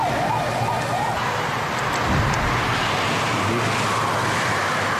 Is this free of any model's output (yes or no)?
yes